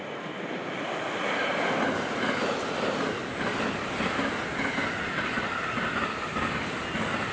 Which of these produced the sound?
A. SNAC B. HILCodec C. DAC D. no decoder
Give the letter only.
D